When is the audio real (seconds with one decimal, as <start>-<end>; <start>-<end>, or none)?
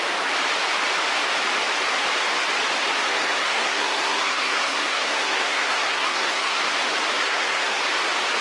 0.0-3.1; 6.6-7.2; 7.8-8.4